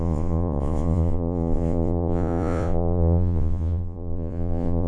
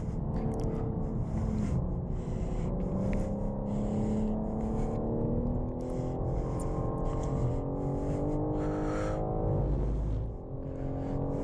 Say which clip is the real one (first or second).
second